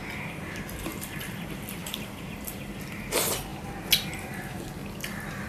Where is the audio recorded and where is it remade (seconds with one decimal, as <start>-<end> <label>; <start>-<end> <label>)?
0.0-0.9 recorded; 0.9-3.0 remade; 3.0-4.8 recorded; 4.8-5.5 remade